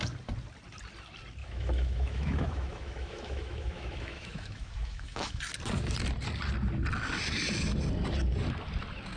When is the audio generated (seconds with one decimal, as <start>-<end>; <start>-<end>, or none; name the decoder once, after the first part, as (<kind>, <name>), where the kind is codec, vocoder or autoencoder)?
1.4-5.4 (autoencoder, DAC-VAE)